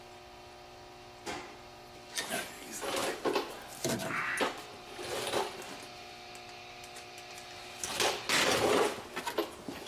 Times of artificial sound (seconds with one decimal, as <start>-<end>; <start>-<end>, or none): none